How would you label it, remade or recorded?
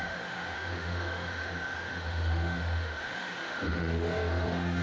remade